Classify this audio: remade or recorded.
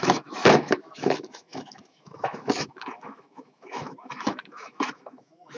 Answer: remade